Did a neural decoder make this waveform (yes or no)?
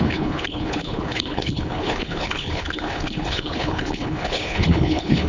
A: yes